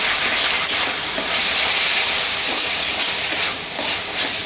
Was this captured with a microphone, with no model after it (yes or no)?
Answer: yes